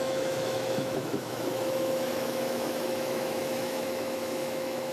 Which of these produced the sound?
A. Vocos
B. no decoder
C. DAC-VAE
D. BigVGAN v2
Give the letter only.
C